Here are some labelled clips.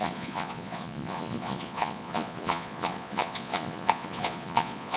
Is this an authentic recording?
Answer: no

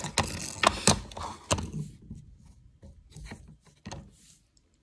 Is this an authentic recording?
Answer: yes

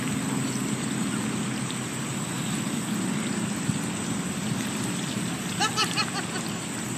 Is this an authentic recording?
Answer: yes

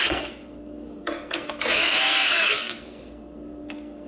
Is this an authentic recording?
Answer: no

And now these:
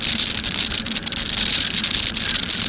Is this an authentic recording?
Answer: no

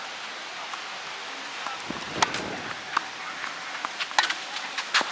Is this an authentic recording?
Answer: yes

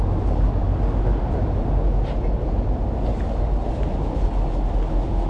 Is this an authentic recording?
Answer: yes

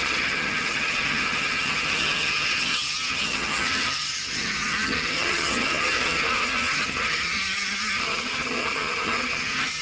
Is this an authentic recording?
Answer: no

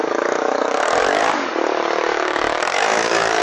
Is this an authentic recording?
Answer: no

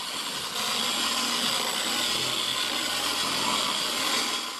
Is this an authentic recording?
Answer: yes